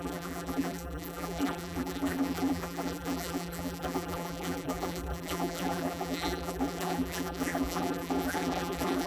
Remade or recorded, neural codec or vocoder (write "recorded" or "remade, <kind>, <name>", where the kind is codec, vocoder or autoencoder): remade, vocoder, BigVGAN v2